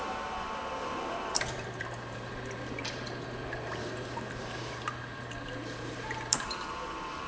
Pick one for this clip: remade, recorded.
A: remade